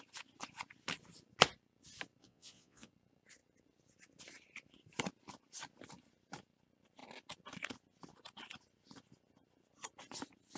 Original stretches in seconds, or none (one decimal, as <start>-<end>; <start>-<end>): 0.0-2.2; 2.9-10.6